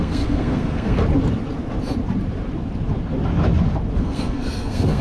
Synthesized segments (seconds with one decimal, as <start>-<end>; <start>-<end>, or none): 0.0-1.0; 4.0-5.0